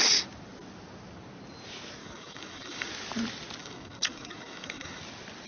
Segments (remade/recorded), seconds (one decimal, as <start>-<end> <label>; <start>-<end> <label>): 0.0-2.0 recorded; 2.0-2.9 remade; 2.9-3.6 recorded; 3.6-5.0 remade; 5.0-5.5 recorded